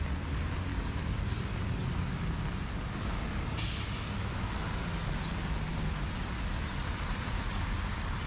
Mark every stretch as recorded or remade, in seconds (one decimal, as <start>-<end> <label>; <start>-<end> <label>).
0.0-0.7 recorded; 0.7-1.8 remade; 1.8-5.7 recorded; 5.7-7.9 remade; 7.9-8.3 recorded